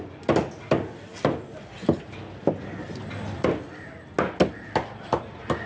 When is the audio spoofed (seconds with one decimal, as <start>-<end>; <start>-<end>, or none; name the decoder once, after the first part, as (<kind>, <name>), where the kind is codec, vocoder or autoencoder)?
none